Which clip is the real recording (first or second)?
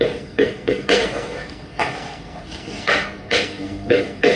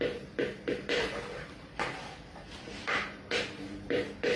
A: second